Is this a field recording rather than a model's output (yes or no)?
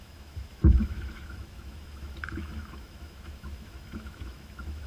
no